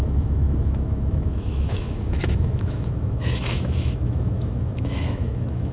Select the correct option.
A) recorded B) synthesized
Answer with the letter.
B